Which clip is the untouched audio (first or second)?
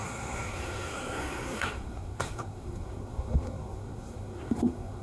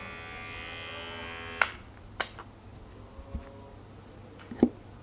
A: second